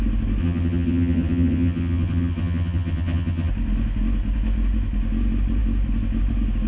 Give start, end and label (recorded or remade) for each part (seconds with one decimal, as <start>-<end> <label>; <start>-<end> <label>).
0.0-0.4 recorded; 0.4-3.5 remade; 3.5-6.7 recorded

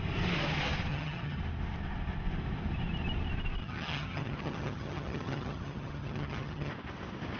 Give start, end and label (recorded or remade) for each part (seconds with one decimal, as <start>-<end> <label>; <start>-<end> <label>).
0.0-0.9 recorded; 0.9-1.4 remade; 1.4-3.6 recorded; 3.6-6.7 remade; 6.7-7.4 recorded